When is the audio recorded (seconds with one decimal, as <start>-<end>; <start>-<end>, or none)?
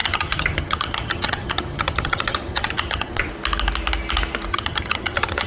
3.3-4.5